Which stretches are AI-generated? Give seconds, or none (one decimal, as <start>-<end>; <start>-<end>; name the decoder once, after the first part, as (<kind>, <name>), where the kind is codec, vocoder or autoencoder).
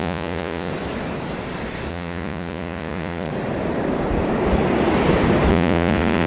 0.0-0.7 (vocoder, Vocos); 1.9-3.3; 5.5-6.3